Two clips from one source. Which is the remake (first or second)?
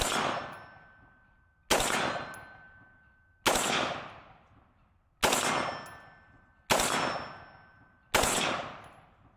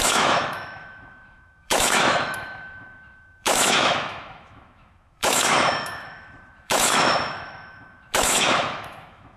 second